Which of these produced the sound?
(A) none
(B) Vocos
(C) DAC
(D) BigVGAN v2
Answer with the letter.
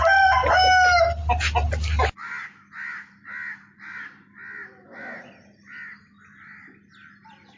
A